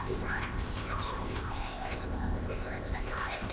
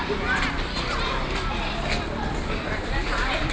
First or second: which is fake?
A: first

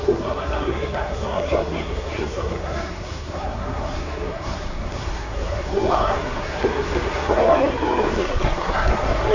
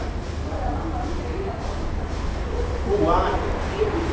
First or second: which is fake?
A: first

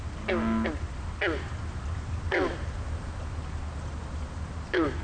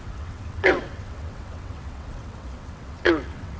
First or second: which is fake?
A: second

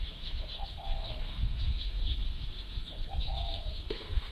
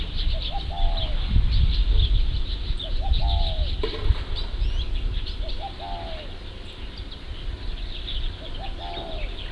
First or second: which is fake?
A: first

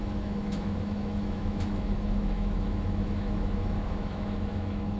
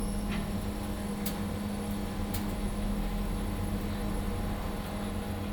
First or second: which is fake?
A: first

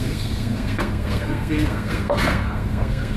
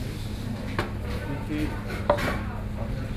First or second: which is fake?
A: first